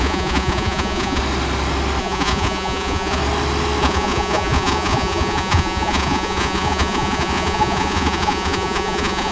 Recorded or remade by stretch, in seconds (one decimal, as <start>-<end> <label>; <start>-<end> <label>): 0.0-1.2 remade; 1.2-2.0 recorded; 2.0-3.2 remade; 3.2-3.8 recorded; 3.8-9.3 remade

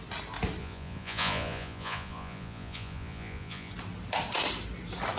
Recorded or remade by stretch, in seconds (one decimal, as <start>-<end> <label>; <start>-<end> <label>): 0.0-0.6 recorded; 0.6-3.7 remade; 3.7-5.2 recorded